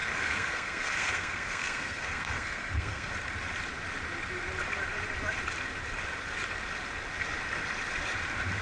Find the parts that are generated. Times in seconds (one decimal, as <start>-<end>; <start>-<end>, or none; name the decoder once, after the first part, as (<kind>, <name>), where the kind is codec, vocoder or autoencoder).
0.0-3.1 (codec, SNAC)